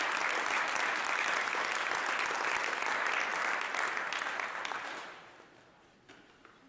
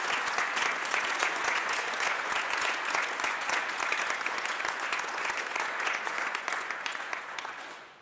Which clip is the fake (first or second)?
second